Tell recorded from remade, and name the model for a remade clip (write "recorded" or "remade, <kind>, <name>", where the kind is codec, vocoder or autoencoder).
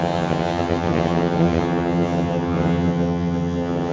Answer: remade, vocoder, HiFi-GAN